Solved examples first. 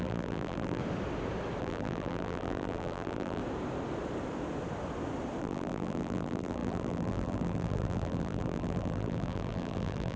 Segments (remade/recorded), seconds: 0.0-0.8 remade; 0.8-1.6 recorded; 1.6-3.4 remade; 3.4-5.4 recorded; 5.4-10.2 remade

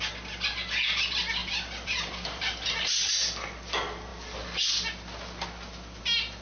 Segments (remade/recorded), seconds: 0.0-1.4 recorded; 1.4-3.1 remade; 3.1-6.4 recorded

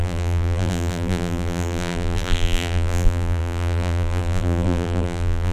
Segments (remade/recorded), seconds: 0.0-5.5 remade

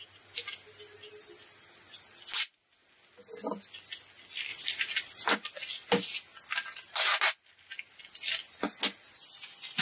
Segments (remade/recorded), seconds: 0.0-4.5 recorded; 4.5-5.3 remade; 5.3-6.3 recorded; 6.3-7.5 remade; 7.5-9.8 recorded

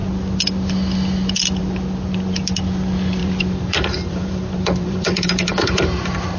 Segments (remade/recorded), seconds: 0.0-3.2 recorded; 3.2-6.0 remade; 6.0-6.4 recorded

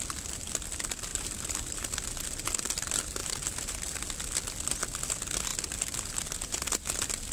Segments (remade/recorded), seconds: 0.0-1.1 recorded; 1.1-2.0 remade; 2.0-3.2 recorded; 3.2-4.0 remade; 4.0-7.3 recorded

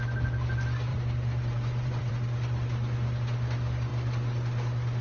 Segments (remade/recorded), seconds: 0.0-0.9 recorded; 0.9-2.1 remade; 2.1-5.0 recorded

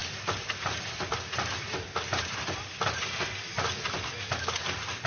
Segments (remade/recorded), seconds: 0.0-5.1 recorded